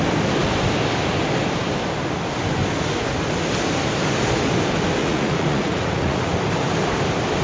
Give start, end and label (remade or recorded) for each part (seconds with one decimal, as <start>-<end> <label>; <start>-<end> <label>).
0.0-5.0 recorded; 5.0-6.3 remade; 6.3-7.4 recorded